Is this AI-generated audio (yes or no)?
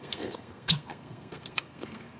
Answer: yes